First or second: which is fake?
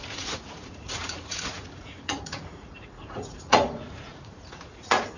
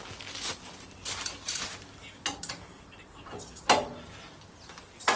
first